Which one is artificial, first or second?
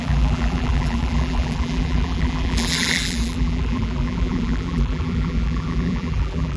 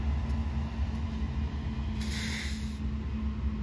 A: first